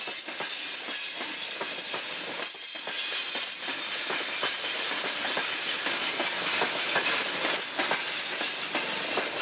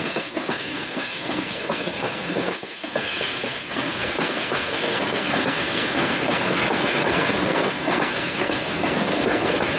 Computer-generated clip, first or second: second